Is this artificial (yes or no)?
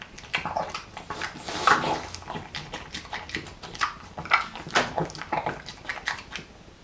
no